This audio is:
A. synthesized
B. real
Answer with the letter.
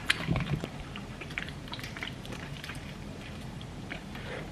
A